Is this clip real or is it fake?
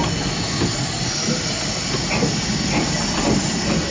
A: real